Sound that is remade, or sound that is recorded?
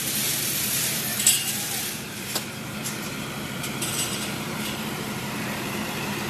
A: remade